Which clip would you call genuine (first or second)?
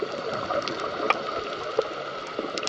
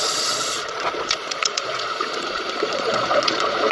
first